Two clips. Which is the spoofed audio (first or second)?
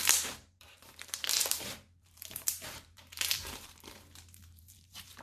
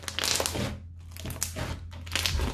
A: first